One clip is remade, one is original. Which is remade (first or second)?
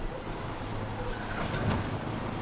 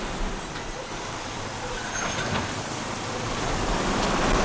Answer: second